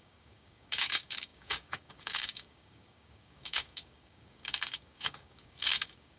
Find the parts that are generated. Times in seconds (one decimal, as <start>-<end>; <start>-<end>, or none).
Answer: 0.0-6.2